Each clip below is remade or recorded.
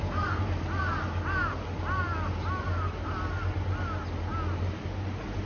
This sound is recorded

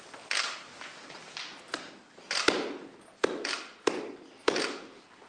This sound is recorded